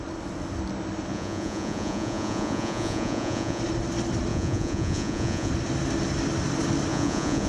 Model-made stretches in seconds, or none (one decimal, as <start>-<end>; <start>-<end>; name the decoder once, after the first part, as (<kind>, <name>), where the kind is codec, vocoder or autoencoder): 1.1-3.6 (vocoder, Vocos); 4.3-5.5; 6.9-7.5